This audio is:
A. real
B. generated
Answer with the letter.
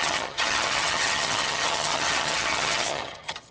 B